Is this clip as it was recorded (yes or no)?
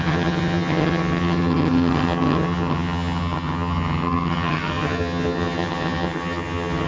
no